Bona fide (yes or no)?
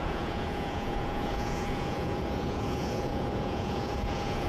no